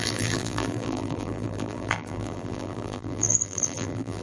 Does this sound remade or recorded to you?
remade